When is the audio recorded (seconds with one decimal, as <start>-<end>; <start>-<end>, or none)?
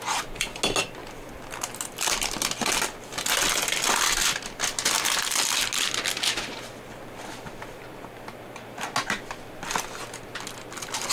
0.0-1.0; 1.6-11.1